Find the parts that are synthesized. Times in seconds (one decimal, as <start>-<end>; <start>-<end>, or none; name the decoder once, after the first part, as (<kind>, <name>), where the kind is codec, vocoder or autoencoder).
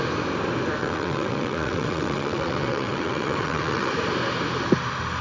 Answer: 0.8-3.9 (vocoder, WaveNeXt)